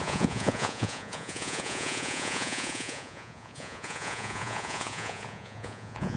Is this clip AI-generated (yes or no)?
yes